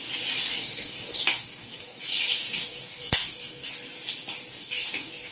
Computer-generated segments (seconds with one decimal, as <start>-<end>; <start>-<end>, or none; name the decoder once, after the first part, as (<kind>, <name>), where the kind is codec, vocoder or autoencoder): 0.5-2.0 (codec, DAC); 2.4-3.7; 4.5-5.3